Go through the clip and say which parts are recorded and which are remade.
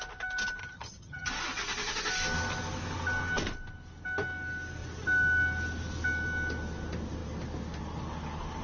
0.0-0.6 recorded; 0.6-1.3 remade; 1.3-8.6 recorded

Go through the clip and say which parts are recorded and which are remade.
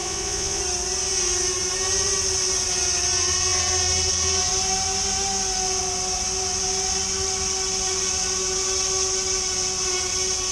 0.0-0.6 remade; 0.6-10.5 recorded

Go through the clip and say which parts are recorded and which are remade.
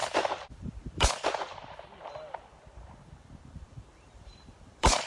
0.0-5.1 remade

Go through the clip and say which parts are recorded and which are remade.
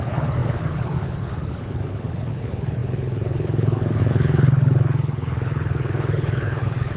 0.0-7.0 remade